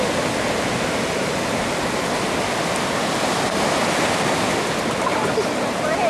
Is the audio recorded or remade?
recorded